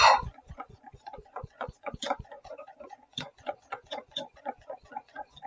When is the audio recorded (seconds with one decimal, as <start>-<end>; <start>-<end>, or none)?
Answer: none